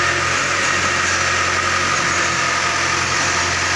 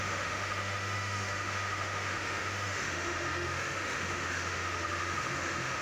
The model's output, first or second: second